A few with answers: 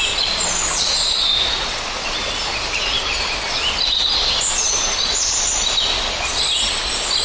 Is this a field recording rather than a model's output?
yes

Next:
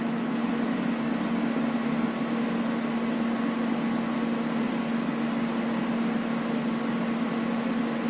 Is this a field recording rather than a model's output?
yes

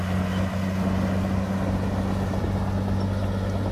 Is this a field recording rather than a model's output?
yes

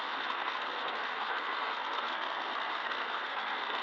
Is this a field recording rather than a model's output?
no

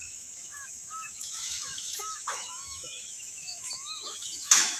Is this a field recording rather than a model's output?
no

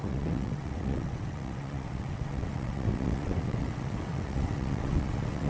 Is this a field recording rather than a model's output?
no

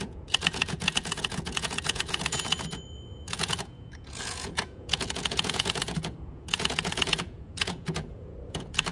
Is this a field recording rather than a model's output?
no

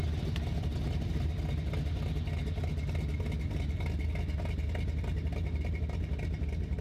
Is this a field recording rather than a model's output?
yes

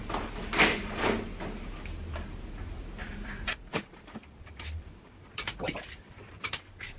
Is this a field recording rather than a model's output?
no